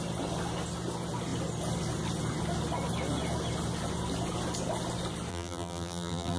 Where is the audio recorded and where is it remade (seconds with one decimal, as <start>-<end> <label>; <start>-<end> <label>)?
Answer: 0.0-5.3 recorded; 5.3-6.4 remade